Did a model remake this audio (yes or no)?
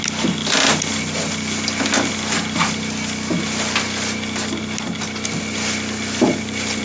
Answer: no